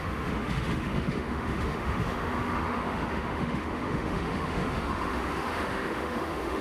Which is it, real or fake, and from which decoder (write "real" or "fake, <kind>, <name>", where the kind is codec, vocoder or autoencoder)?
fake, autoencoder, DAC-VAE